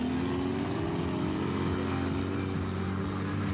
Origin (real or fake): real